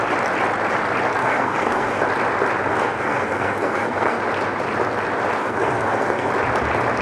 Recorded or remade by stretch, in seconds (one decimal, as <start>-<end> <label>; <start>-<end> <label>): 0.0-1.2 recorded; 1.2-2.0 remade; 2.0-2.7 recorded; 2.7-4.2 remade; 4.2-5.4 recorded; 5.4-6.3 remade; 6.3-7.0 recorded